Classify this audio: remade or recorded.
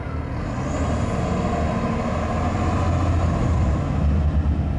recorded